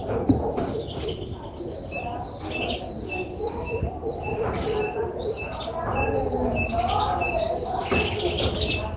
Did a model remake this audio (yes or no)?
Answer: no